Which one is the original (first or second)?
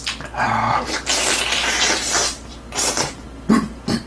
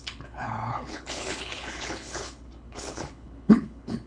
first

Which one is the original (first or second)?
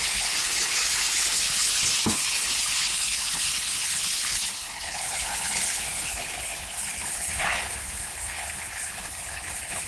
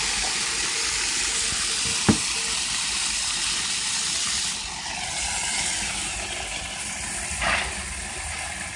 second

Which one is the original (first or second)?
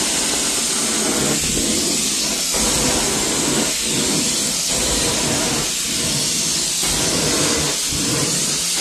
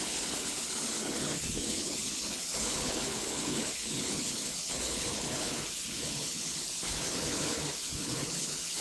first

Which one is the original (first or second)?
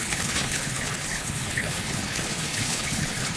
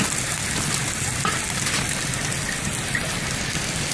second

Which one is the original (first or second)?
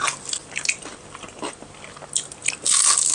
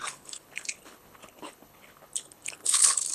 first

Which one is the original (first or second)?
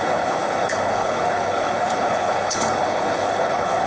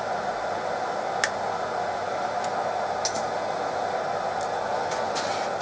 second